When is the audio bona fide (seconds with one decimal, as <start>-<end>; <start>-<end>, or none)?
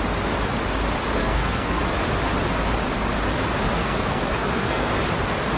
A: 0.0-1.2; 1.8-3.8; 4.9-5.6